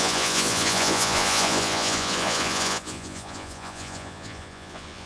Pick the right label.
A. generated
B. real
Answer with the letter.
A